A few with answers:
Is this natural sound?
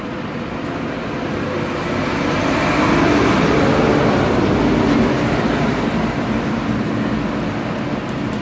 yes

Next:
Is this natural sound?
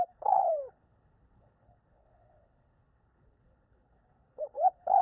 no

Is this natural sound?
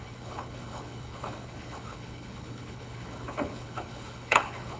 no